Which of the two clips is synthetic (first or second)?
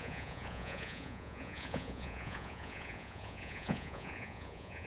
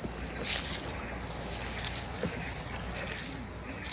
first